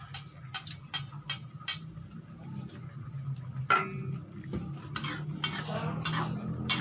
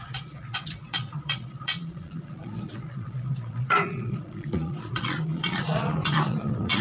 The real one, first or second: first